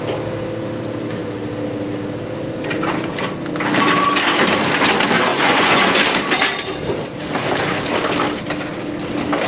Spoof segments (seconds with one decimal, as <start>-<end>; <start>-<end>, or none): 5.3-6.0